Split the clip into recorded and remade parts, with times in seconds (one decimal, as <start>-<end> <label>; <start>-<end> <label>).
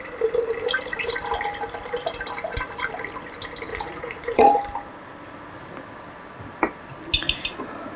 0.0-3.7 recorded; 3.7-4.6 remade; 4.6-8.0 recorded